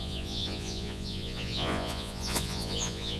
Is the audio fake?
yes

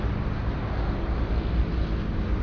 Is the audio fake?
no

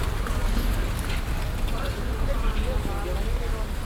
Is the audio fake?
no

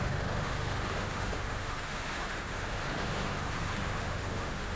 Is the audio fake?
yes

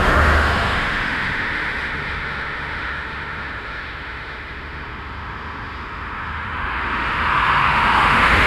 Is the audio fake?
yes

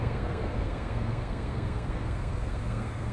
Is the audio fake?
yes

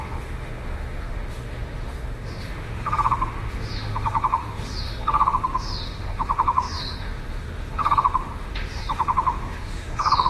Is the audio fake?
yes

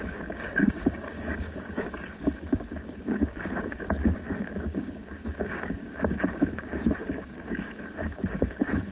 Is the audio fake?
yes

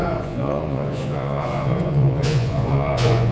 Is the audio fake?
yes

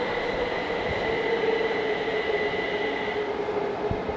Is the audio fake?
no